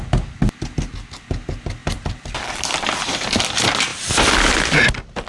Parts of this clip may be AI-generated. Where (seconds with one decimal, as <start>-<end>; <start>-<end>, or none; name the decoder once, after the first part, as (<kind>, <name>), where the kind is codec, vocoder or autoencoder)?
1.8-3.4 (vocoder, BigVGAN v2); 3.9-4.8